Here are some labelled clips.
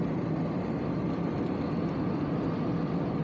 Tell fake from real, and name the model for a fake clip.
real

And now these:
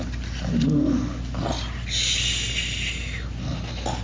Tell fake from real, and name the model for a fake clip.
real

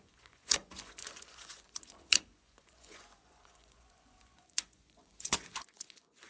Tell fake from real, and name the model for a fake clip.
fake, vocoder, Vocos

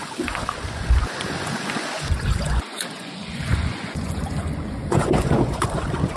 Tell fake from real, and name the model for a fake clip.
fake, vocoder, Vocos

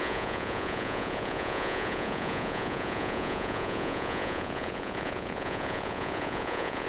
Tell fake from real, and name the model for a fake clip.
fake, vocoder, Vocos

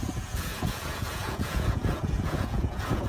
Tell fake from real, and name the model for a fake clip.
fake, vocoder, Vocos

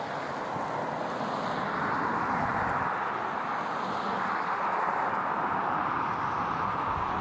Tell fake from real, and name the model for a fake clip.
real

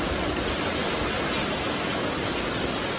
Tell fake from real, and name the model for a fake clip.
real